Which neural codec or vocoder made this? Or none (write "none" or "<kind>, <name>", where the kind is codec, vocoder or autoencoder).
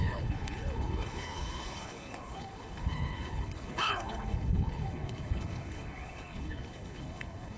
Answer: codec, HILCodec